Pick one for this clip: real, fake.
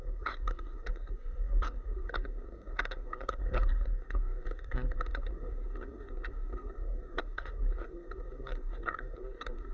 fake